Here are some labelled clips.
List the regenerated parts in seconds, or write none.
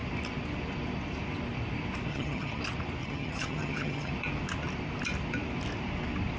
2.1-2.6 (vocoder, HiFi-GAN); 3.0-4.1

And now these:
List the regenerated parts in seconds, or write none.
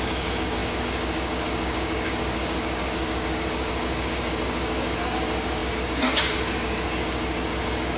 0.0-8.0 (codec, DAC)